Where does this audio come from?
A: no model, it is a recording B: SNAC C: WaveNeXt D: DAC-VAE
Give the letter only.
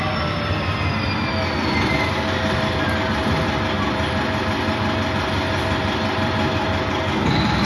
A